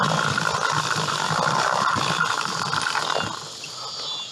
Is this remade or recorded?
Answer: recorded